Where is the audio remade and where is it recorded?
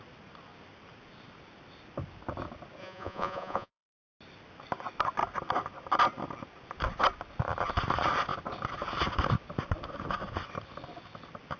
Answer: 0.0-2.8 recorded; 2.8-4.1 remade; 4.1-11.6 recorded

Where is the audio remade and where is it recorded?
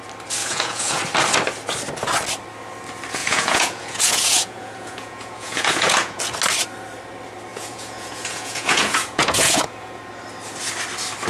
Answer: 0.0-0.4 recorded; 0.4-1.0 remade; 1.0-3.2 recorded; 3.2-6.2 remade; 6.2-7.5 recorded; 7.5-10.0 remade; 10.0-11.3 recorded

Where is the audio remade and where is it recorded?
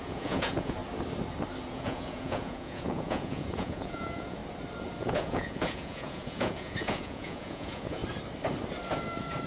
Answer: 0.0-0.8 remade; 0.8-1.7 recorded; 1.7-4.4 remade; 4.4-5.0 recorded; 5.0-8.0 remade; 8.0-9.5 recorded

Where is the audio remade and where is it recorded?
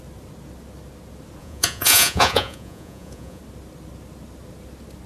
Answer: 0.0-1.4 recorded; 1.4-3.4 remade; 3.4-5.1 recorded